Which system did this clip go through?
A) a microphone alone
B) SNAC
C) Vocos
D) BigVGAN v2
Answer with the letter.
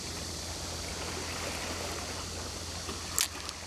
A